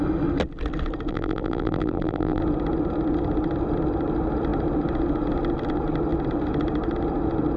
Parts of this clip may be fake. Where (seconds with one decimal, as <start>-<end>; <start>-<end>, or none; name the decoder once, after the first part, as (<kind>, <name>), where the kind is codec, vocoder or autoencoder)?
1.1-2.4 (vocoder, BigVGAN v2)